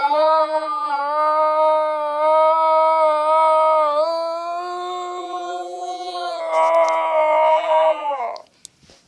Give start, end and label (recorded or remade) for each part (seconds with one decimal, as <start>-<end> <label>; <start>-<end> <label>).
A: 0.0-1.0 remade; 1.0-5.2 recorded; 5.2-6.4 remade; 6.4-7.5 recorded; 7.5-8.2 remade; 8.2-9.1 recorded